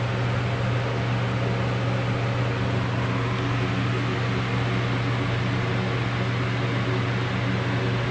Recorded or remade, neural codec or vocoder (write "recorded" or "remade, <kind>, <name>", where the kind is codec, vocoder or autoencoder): recorded